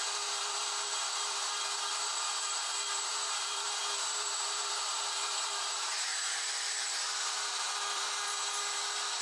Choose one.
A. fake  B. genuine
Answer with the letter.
A